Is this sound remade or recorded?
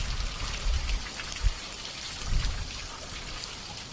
recorded